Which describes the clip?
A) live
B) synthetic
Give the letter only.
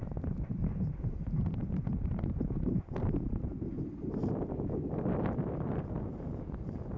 B